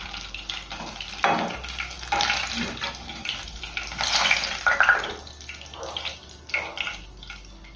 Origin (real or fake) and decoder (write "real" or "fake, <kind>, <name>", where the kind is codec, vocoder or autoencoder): real